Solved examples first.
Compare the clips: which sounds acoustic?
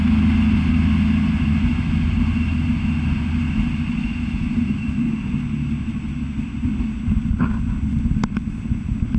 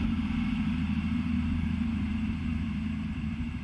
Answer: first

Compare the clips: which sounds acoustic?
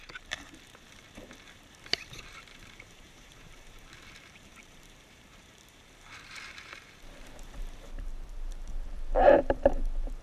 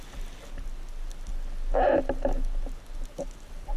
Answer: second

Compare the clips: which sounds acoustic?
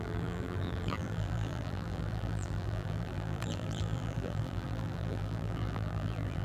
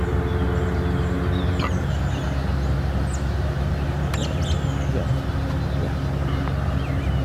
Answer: second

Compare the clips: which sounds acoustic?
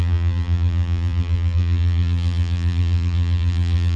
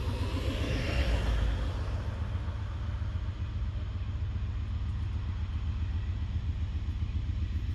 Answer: second